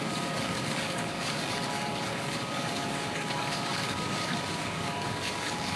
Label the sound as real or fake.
fake